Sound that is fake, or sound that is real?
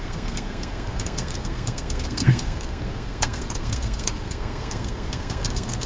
fake